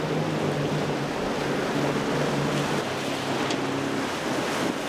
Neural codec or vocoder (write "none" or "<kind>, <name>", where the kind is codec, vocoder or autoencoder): none